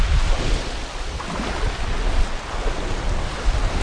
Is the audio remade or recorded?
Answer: recorded